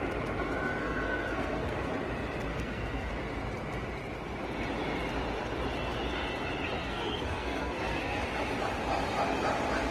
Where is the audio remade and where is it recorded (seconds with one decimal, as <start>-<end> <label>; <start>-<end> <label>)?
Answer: 0.0-0.8 recorded; 0.8-1.9 remade; 1.9-2.5 recorded; 2.5-3.1 remade; 3.1-6.8 recorded; 6.8-8.2 remade; 8.2-9.9 recorded

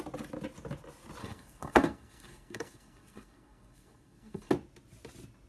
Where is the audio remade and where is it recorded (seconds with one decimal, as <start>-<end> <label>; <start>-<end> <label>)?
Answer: 0.0-1.2 recorded; 1.2-4.5 remade; 4.5-5.5 recorded

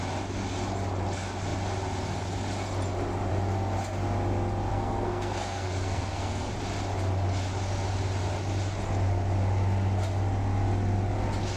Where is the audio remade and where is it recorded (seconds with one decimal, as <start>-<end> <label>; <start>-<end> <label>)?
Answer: 0.0-4.7 recorded; 4.7-6.5 remade; 6.5-11.6 recorded

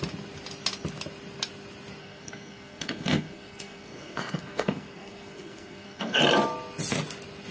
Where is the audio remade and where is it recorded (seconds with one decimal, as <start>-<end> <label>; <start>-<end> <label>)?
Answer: 0.0-2.0 recorded; 2.0-6.2 remade; 6.2-7.5 recorded

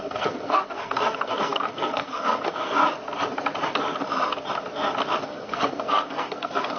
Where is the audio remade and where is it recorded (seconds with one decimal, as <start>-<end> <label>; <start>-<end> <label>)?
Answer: 0.0-2.8 remade; 2.8-5.2 recorded; 5.2-6.8 remade